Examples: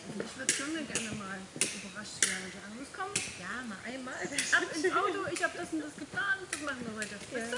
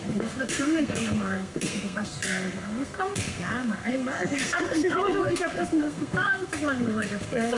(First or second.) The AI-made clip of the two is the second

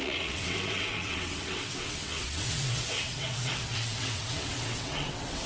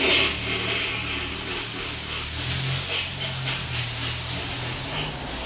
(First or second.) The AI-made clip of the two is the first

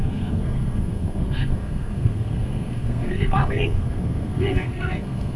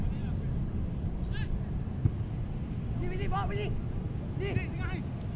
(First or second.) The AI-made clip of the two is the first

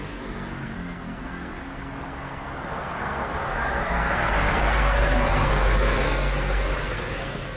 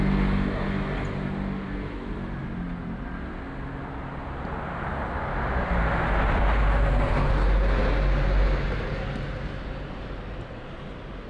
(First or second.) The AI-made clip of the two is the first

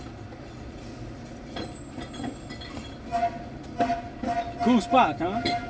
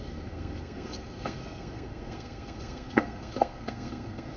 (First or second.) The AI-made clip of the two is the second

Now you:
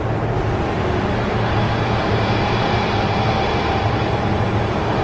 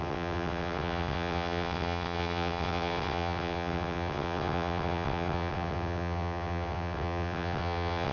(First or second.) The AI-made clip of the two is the second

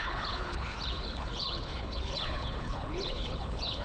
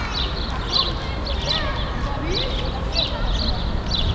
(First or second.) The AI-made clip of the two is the first